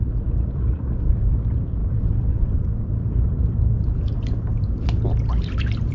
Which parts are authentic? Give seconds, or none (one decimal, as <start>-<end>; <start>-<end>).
none